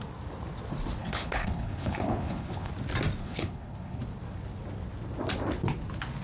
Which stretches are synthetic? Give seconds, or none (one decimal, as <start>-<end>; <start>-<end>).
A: 1.0-2.7; 3.2-4.0